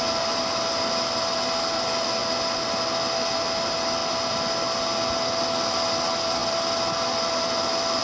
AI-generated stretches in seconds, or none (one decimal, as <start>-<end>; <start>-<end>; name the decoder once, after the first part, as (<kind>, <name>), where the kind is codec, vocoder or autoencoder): none